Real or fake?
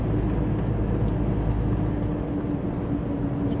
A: real